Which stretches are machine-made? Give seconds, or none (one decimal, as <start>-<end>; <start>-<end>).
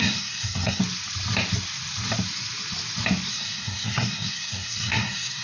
0.0-0.8; 3.3-5.4